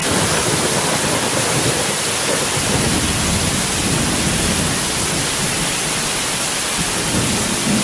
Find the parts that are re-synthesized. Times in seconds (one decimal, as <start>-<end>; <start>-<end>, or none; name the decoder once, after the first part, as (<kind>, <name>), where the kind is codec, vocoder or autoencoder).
none